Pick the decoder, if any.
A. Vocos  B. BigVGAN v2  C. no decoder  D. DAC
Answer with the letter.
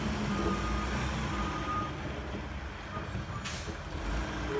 C